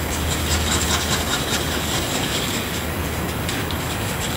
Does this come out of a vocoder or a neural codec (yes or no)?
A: yes